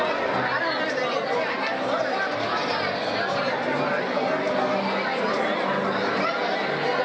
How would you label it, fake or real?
real